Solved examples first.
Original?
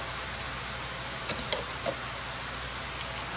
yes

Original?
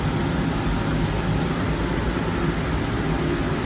yes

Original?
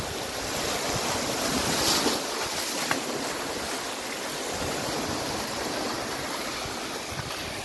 yes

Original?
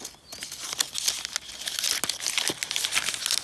yes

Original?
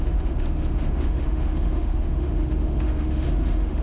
no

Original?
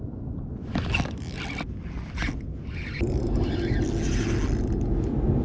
yes